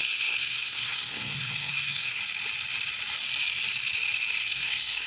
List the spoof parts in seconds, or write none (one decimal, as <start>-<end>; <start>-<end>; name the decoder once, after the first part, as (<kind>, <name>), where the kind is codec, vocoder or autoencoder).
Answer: 0.0-2.2 (codec, SNAC); 4.4-5.1